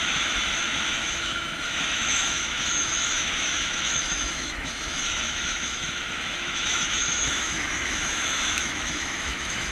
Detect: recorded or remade remade